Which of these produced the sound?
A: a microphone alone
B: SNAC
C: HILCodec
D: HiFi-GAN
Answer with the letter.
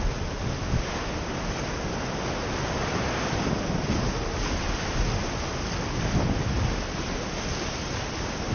A